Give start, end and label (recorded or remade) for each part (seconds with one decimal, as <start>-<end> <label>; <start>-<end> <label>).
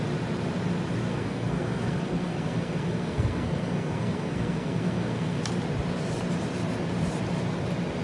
0.0-1.1 recorded; 1.1-5.4 remade; 5.4-8.0 recorded